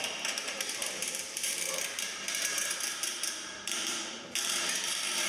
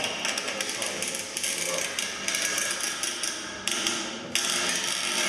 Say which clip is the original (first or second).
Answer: second